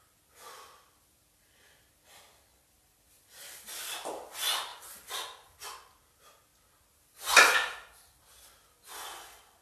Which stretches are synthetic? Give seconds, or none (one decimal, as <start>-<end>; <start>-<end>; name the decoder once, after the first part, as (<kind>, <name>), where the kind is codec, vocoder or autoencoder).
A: none